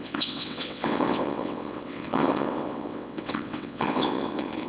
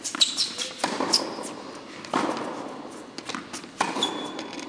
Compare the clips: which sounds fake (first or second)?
first